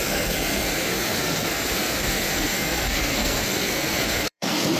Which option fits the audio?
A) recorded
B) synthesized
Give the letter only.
B